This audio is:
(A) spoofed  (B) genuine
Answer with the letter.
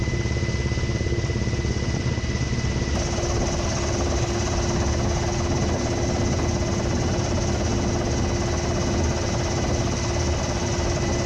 B